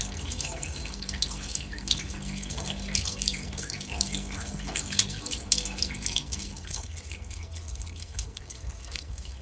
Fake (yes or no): yes